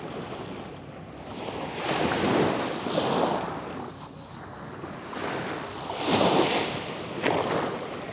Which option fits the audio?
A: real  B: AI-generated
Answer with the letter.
A